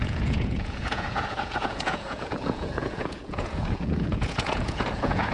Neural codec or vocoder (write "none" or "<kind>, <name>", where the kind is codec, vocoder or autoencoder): vocoder, Vocos